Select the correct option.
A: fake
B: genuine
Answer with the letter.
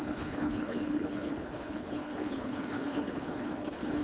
A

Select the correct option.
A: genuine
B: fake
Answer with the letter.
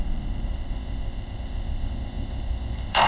B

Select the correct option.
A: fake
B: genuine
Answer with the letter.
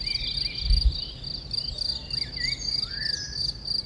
B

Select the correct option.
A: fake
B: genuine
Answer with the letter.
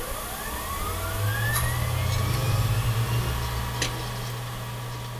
B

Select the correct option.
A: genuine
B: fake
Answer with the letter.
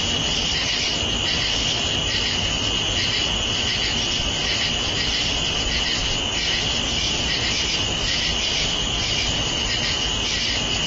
A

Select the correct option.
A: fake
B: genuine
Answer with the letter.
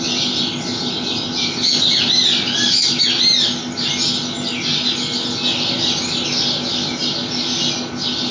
B